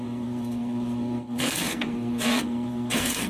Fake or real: fake